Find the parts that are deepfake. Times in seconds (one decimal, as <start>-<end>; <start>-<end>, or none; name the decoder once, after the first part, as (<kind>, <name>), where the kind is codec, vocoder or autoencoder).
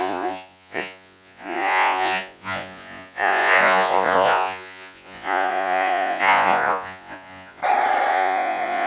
0.0-7.6 (vocoder, Vocos); 8.1-8.9